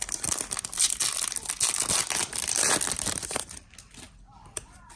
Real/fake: fake